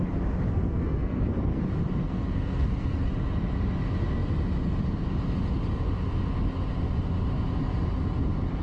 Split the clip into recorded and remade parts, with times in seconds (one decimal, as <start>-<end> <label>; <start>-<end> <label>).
0.0-0.5 recorded; 0.5-1.6 remade; 1.6-2.0 recorded; 2.0-3.1 remade; 3.1-8.6 recorded